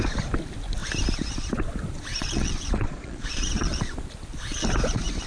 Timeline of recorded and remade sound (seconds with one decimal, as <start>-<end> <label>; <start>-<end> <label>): 0.0-2.1 recorded; 2.1-3.8 remade; 3.8-5.3 recorded